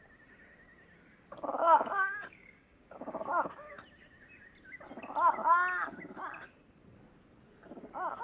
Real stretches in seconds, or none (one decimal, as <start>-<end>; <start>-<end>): 0.0-1.6; 3.8-8.2